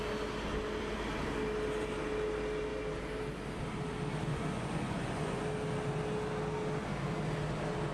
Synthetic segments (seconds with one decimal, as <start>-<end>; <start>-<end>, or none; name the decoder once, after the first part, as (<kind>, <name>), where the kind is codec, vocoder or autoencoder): 4.3-5.4 (vocoder, Vocos)